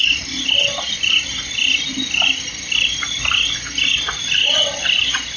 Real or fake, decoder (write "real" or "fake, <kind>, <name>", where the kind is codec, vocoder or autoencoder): real